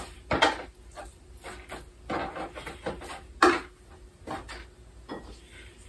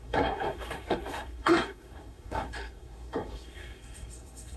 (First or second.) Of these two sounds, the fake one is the second